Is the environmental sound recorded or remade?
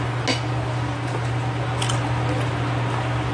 recorded